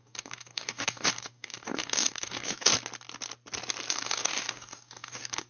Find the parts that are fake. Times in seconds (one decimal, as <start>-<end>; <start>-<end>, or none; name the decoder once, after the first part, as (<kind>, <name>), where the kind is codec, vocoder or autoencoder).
0.0-2.7 (codec, DAC); 3.9-5.5